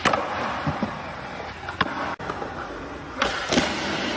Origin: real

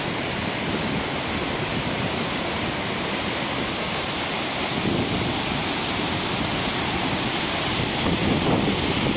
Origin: real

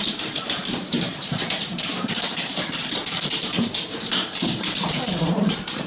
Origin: fake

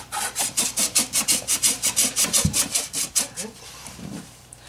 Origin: fake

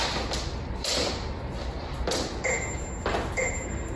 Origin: real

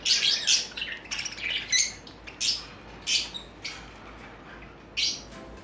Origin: real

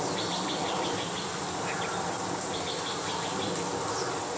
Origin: real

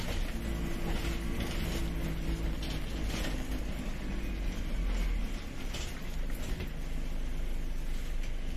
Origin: real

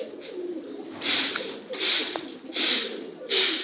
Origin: real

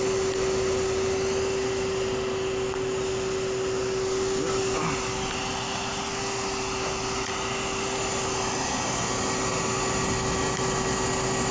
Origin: real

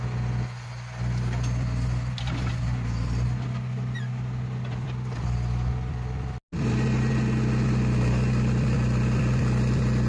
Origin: real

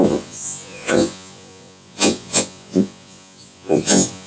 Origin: fake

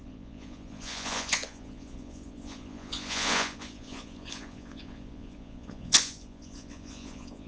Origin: fake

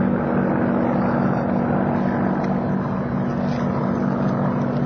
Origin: real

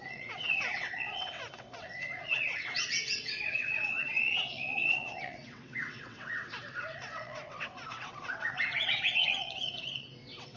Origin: fake